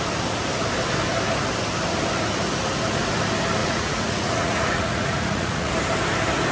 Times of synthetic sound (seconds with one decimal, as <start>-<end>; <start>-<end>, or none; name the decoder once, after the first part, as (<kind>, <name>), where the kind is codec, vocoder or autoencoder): 3.6-5.7 (vocoder, Vocos)